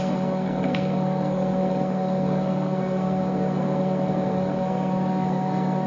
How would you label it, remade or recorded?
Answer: remade